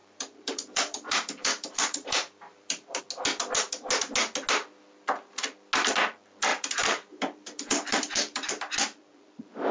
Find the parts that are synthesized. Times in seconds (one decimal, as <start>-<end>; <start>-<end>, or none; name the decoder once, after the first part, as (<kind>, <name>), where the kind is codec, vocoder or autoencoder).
0.0-3.0 (vocoder, BigVGAN v2); 6.5-8.5